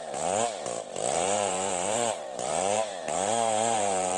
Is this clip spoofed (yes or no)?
yes